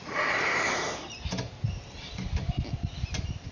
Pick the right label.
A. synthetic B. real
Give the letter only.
B